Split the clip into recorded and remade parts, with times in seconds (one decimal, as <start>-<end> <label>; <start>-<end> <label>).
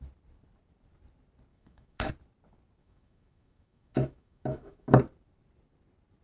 0.0-1.5 recorded; 1.5-2.1 remade; 2.1-2.8 recorded; 2.8-5.0 remade; 5.0-6.2 recorded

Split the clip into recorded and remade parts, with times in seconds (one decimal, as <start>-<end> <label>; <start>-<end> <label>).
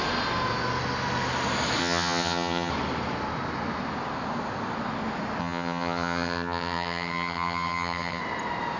0.0-1.8 recorded; 1.8-2.7 remade; 2.7-5.4 recorded; 5.4-8.2 remade; 8.2-8.8 recorded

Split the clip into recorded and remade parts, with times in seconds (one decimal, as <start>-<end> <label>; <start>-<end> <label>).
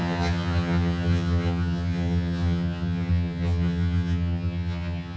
0.0-5.2 remade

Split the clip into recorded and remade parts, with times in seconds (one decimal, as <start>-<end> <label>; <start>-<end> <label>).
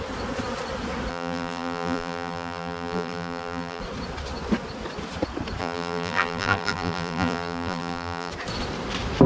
0.0-1.1 recorded; 1.1-3.8 remade; 3.8-5.6 recorded; 5.6-8.3 remade; 8.3-9.3 recorded